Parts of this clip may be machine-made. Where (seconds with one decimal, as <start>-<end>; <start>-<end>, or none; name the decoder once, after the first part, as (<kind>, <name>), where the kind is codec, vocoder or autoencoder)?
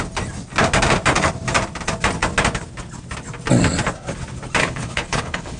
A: 4.6-5.6 (codec, HILCodec)